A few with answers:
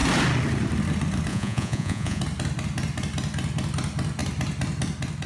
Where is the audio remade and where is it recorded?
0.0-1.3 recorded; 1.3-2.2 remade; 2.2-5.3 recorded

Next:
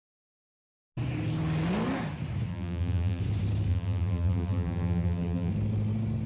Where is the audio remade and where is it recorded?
0.0-2.5 recorded; 2.5-3.2 remade; 3.2-3.7 recorded; 3.7-5.5 remade; 5.5-6.3 recorded

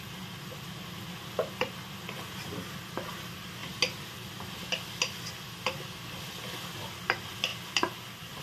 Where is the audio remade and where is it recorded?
0.0-8.4 recorded

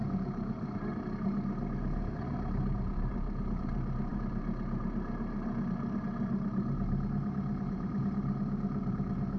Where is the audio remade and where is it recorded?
0.0-9.4 remade

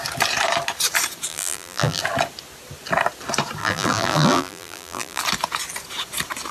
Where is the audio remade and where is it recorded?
0.0-1.3 recorded; 1.3-2.0 remade; 2.0-3.6 recorded; 3.6-5.2 remade; 5.2-6.5 recorded

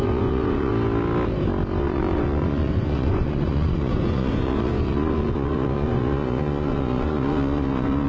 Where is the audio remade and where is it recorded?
0.0-0.7 remade; 0.7-1.8 recorded; 1.8-8.1 remade

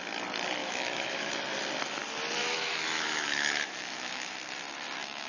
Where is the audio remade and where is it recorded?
0.0-0.6 recorded; 0.6-1.3 remade; 1.3-2.4 recorded; 2.4-4.3 remade; 4.3-5.3 recorded